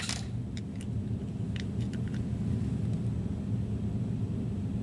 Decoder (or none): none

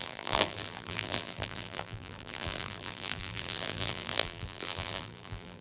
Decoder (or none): vocoder, BigVGAN v2